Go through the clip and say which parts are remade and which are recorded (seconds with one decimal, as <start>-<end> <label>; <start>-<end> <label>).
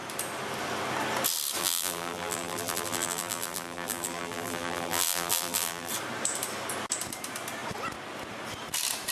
0.0-1.6 recorded; 1.6-5.9 remade; 5.9-9.1 recorded